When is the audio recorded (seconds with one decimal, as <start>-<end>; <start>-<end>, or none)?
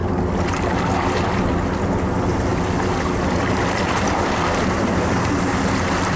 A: 0.0-6.2